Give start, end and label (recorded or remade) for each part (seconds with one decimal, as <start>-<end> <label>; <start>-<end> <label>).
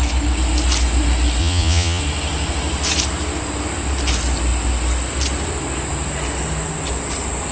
0.0-1.4 recorded; 1.4-2.0 remade; 2.0-7.5 recorded